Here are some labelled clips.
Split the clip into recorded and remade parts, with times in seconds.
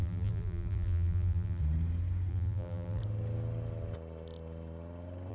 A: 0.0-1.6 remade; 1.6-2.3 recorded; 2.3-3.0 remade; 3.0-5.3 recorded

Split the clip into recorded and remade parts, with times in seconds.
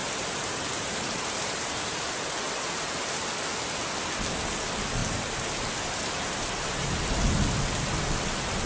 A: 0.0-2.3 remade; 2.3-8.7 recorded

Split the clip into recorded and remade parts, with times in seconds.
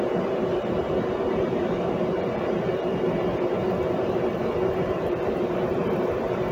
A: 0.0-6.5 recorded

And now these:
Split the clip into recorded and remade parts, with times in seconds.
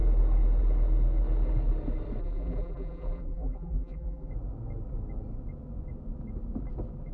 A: 0.0-2.2 recorded; 2.2-4.3 remade; 4.3-7.1 recorded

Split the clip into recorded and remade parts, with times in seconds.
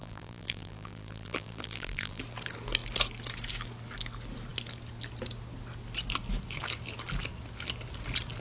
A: 0.0-2.2 remade; 2.2-8.4 recorded